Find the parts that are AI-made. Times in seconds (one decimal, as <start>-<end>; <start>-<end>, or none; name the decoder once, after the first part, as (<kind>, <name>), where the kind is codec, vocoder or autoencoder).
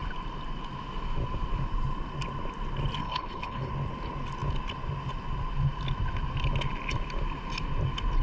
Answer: 3.0-3.7 (codec, HILCodec)